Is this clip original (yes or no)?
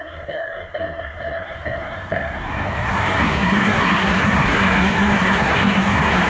no